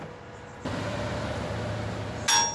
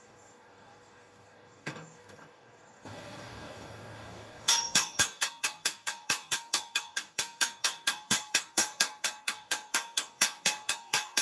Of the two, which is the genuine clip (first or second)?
first